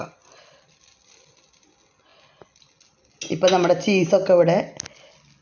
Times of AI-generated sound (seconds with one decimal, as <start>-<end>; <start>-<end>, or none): none